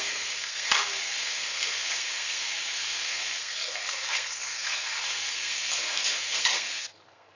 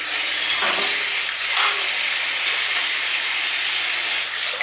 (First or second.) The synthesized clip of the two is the first